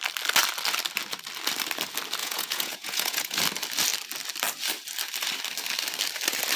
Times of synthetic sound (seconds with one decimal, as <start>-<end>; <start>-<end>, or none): 2.2-3.4

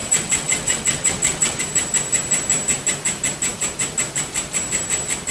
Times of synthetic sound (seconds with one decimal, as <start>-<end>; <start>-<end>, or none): 0.0-1.6

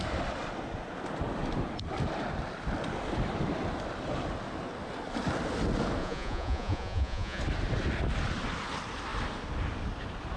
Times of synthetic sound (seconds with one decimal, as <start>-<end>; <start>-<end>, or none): 6.0-7.4

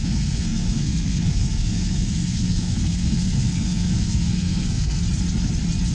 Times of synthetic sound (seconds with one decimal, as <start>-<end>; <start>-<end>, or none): 0.0-5.0

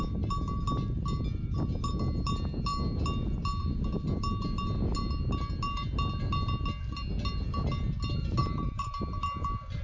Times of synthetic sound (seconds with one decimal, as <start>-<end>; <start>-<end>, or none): 8.4-8.9

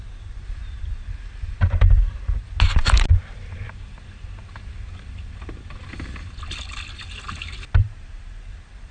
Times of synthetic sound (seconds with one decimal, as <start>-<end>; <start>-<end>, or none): none

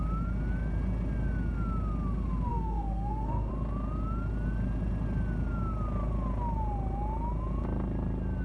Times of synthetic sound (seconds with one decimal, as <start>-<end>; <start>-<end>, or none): 2.5-3.5